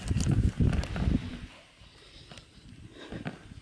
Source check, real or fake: real